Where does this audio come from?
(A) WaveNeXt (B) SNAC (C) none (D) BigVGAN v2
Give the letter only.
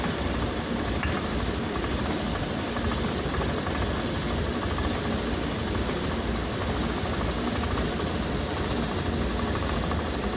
D